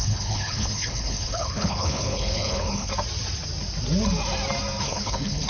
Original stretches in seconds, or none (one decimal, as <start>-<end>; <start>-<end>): 2.9-4.8